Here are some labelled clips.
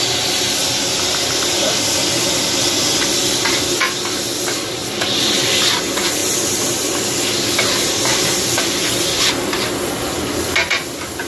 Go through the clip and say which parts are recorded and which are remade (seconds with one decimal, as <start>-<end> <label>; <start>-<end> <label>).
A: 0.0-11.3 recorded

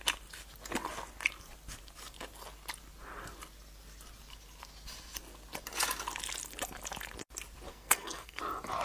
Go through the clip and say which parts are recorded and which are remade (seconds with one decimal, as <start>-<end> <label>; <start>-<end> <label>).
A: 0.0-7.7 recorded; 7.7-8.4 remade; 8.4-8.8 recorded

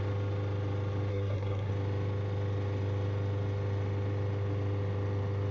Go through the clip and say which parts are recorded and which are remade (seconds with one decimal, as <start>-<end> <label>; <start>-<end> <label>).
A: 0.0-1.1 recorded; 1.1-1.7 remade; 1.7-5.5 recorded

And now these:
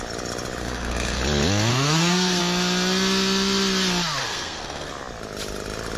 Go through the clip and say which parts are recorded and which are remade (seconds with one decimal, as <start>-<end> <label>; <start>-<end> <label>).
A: 0.0-0.6 recorded; 0.6-1.2 remade; 1.2-1.7 recorded; 1.7-2.4 remade; 2.4-4.2 recorded; 4.2-4.9 remade; 4.9-6.0 recorded

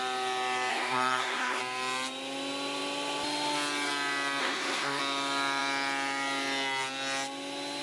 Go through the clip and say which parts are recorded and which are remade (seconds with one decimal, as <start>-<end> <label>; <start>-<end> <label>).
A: 0.0-0.7 recorded; 0.7-1.6 remade; 1.6-4.4 recorded; 4.4-5.0 remade; 5.0-7.8 recorded